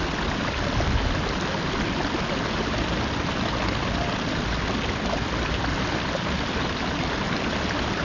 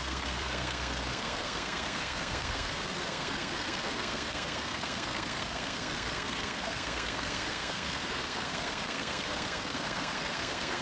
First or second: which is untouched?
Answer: first